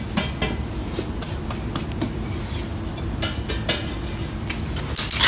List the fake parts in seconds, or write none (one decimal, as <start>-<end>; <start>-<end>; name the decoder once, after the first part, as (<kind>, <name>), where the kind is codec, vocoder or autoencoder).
none